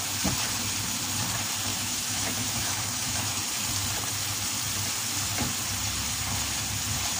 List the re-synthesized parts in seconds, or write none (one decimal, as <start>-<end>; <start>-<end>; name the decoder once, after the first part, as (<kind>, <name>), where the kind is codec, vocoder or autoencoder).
1.7-3.4 (autoencoder, DAC-VAE)